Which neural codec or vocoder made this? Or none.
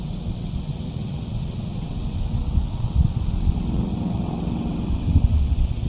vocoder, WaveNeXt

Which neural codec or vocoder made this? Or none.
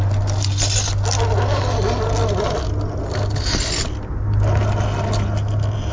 none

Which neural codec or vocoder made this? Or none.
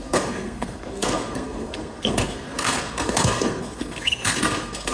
codec, SNAC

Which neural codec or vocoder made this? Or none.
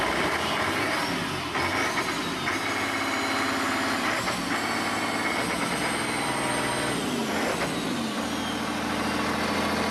none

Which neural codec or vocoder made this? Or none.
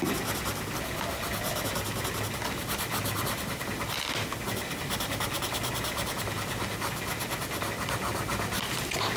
none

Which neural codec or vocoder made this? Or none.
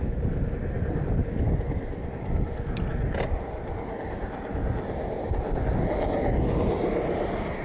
none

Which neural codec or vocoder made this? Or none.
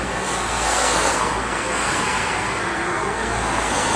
codec, SNAC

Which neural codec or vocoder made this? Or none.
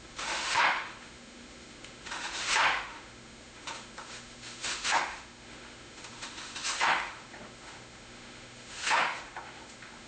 autoencoder, DAC-VAE